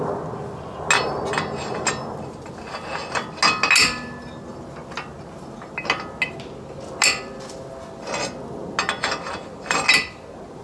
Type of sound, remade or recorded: recorded